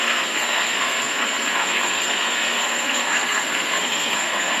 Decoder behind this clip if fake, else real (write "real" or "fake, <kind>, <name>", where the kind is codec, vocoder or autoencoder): fake, codec, SNAC